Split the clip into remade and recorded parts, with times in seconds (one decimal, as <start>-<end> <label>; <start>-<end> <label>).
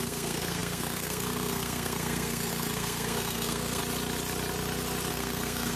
0.0-3.8 remade; 3.8-5.1 recorded; 5.1-5.8 remade